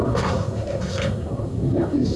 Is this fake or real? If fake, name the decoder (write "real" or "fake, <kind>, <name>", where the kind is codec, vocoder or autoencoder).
fake, codec, SNAC